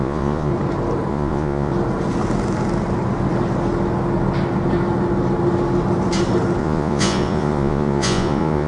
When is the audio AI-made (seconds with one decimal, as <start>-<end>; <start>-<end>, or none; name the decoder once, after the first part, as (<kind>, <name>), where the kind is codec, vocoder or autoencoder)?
0.0-0.5 (vocoder, Vocos); 1.1-1.7; 6.6-8.7